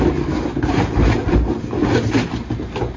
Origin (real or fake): real